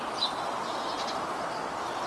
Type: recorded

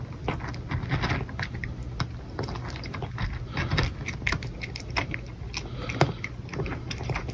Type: recorded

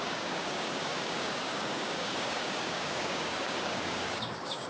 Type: remade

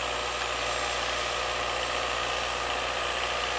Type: recorded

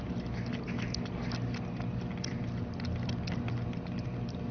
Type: recorded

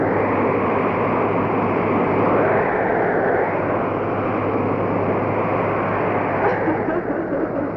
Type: recorded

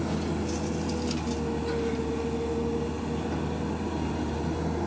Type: recorded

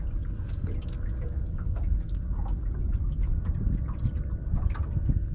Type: recorded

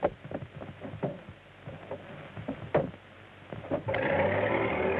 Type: recorded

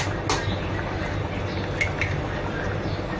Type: recorded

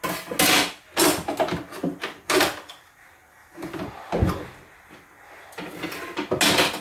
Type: recorded